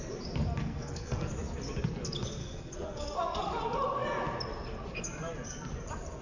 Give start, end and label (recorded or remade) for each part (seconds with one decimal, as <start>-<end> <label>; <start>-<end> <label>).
0.0-0.6 recorded; 0.6-1.3 remade; 1.3-2.4 recorded; 2.4-3.4 remade; 3.4-6.2 recorded